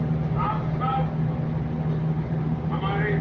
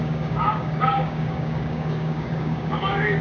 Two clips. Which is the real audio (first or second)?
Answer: first